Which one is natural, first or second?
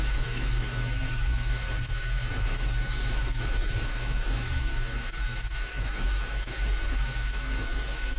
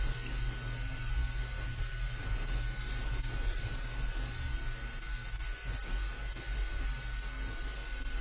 second